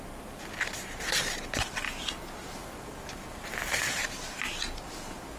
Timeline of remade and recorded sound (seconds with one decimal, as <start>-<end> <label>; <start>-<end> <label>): 0.0-2.6 recorded; 2.6-4.0 remade; 4.0-5.4 recorded